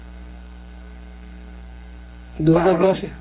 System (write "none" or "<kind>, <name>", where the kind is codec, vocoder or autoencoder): codec, SNAC